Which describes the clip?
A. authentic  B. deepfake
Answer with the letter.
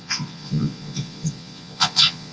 B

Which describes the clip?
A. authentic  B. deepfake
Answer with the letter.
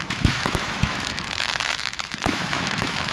B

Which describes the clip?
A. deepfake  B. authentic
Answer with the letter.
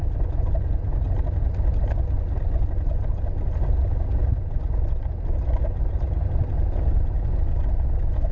B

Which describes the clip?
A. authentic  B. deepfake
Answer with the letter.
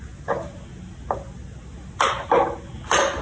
A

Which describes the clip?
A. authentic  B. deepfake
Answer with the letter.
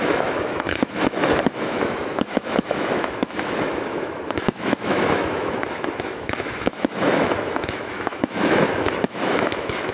B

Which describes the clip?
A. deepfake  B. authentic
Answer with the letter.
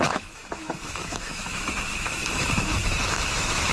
A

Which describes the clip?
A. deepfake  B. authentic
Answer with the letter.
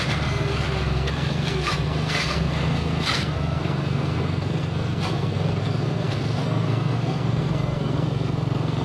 A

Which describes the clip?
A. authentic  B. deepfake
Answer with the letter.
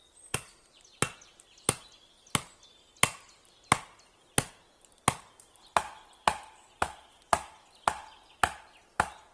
A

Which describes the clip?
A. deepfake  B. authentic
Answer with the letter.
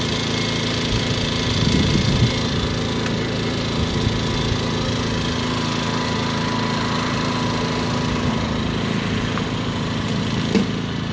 B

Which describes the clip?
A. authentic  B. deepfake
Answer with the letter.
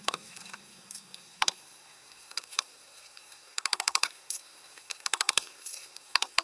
B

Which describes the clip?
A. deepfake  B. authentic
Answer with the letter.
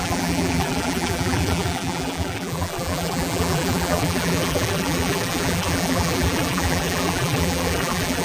A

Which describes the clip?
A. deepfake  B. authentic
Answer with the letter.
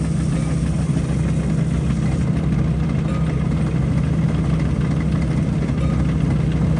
B